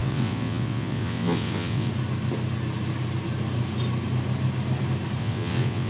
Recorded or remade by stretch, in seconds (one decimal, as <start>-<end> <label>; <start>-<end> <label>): 0.0-1.9 remade; 1.9-5.2 recorded; 5.2-5.9 remade